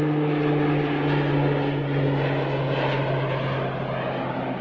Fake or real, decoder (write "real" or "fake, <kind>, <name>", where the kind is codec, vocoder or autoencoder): real